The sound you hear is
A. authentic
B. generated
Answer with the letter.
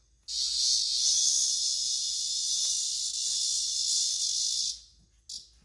A